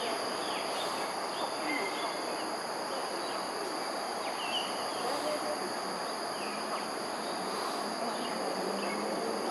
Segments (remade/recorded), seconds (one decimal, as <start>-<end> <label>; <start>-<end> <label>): 0.0-3.0 recorded; 3.0-3.6 remade; 3.6-9.5 recorded